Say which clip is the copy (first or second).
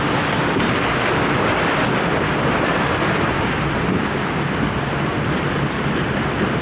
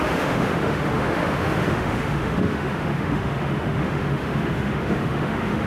second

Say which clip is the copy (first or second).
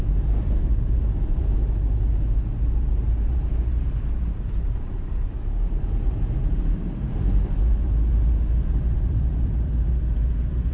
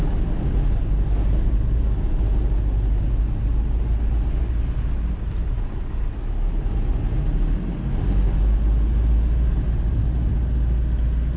first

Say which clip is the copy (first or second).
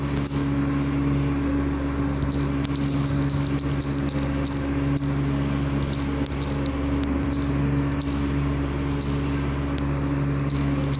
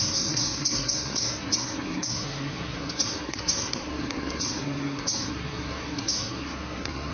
second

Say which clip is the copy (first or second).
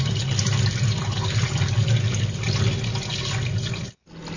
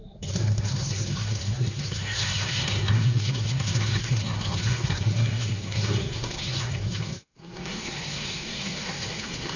second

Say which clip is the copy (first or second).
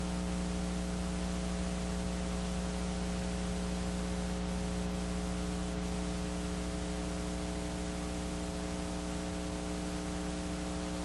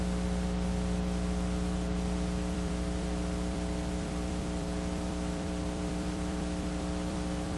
second